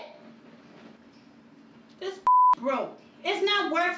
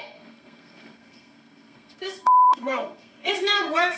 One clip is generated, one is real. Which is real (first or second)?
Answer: first